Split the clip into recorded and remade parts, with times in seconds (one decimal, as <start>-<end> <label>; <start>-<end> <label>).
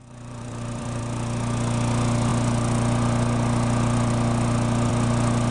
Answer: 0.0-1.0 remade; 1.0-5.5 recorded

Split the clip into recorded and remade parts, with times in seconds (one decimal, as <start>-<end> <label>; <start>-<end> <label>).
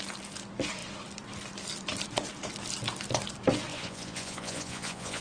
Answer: 0.0-3.7 recorded; 3.7-5.2 remade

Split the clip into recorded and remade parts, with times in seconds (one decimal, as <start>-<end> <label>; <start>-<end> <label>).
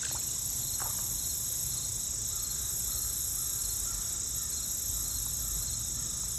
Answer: 0.0-6.4 recorded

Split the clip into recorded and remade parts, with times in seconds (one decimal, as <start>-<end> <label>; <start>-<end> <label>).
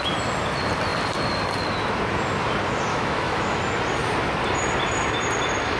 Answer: 0.0-2.9 recorded; 2.9-3.6 remade; 3.6-5.8 recorded